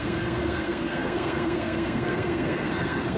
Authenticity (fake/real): fake